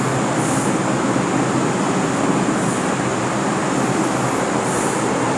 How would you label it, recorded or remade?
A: recorded